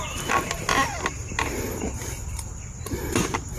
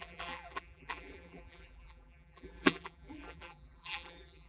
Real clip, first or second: first